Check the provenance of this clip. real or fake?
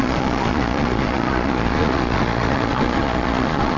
fake